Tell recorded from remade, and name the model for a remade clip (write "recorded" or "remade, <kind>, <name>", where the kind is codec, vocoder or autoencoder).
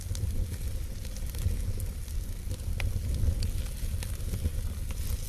recorded